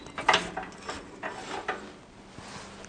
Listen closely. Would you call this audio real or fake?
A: real